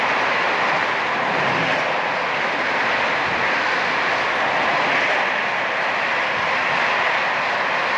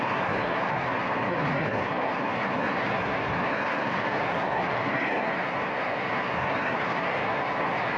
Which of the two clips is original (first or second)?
first